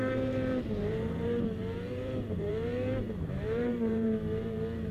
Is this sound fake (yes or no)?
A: yes